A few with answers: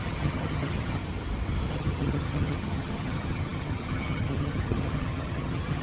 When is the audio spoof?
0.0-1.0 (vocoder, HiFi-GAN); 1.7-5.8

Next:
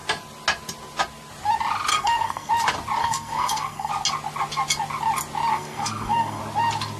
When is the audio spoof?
1.9-2.5 (codec, SNAC); 3.0-3.9; 5.5-6.4